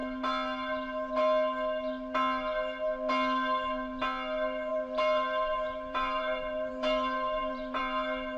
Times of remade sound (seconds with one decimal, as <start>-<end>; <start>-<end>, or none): 4.7-7.8